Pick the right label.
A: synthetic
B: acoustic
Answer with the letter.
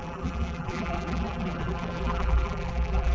A